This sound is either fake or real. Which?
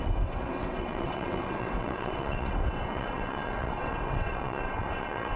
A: fake